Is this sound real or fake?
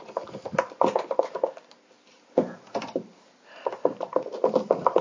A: real